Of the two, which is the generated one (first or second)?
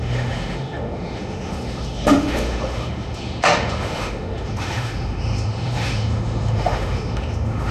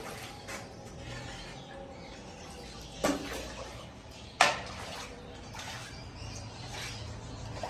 first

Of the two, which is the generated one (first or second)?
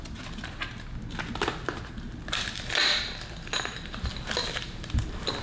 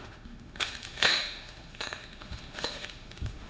second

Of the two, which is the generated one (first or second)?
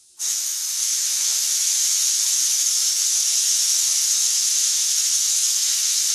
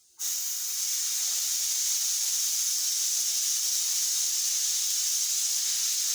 first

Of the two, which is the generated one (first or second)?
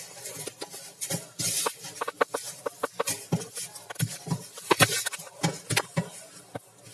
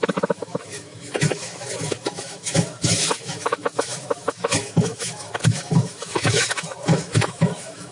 second